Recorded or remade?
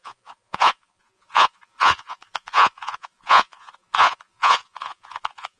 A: remade